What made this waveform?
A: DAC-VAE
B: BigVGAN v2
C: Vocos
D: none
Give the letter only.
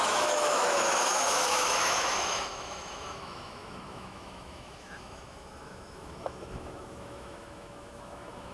A